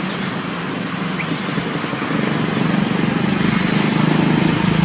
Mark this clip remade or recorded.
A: recorded